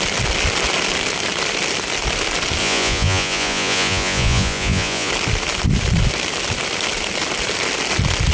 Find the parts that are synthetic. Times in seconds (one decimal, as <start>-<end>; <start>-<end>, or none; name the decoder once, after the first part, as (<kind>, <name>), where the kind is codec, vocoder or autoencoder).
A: 2.6-5.1 (vocoder, Vocos)

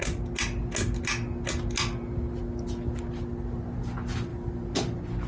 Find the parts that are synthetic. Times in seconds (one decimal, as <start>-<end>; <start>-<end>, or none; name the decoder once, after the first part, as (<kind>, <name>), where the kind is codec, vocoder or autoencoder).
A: none

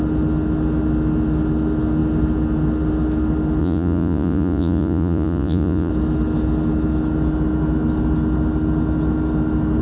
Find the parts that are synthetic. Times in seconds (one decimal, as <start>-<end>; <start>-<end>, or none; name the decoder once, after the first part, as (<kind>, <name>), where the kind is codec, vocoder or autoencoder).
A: 3.6-5.9 (vocoder, Vocos)